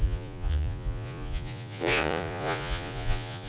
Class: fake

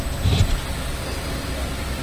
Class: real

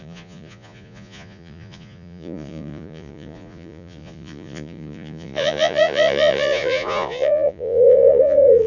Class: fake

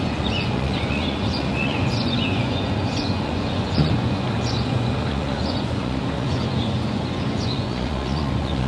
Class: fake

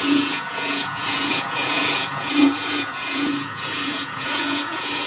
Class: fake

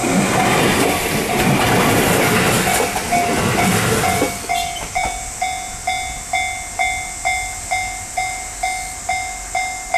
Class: real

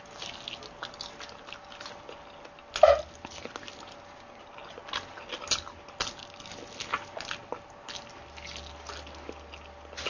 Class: real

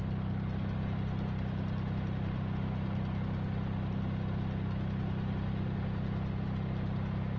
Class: real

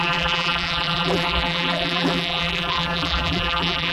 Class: fake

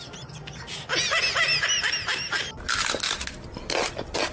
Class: real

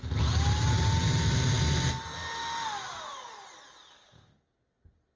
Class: real